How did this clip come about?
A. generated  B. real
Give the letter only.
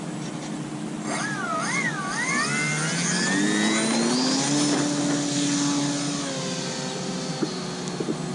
B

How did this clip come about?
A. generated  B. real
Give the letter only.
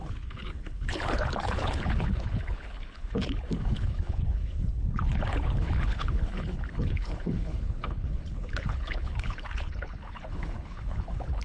A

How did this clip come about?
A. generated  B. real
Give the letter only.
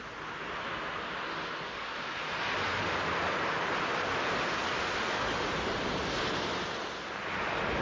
B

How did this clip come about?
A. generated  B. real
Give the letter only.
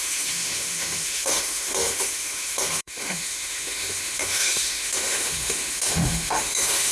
A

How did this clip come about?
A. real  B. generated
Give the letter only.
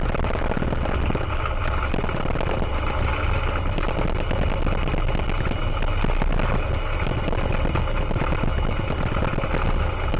A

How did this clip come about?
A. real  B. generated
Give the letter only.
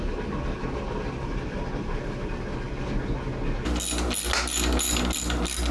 A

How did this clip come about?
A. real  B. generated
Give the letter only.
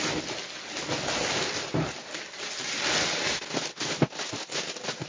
A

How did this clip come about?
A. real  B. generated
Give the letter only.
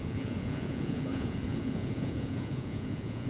B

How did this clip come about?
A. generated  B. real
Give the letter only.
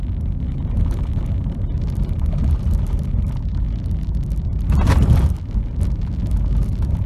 B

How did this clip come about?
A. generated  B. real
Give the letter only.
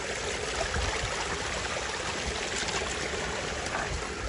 B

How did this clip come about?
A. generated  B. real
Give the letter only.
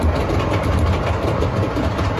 B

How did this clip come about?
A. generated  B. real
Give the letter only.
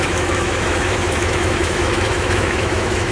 A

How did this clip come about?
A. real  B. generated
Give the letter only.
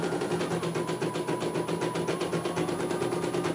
A